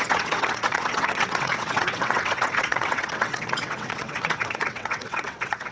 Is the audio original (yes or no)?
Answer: no